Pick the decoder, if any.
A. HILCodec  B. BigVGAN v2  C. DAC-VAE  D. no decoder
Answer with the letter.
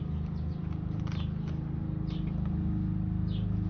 D